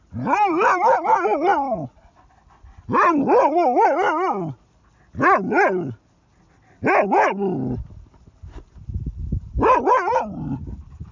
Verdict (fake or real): real